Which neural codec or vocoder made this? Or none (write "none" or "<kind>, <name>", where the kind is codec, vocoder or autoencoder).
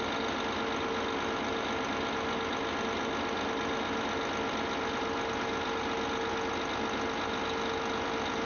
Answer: none